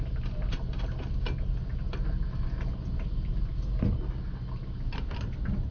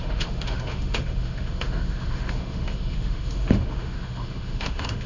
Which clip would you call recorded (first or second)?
first